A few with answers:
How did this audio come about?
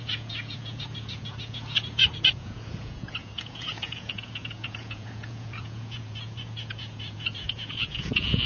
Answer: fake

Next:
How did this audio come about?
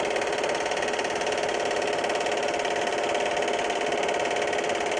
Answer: real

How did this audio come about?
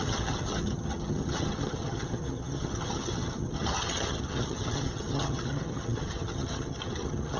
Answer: fake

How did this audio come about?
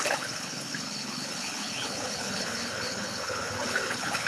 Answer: fake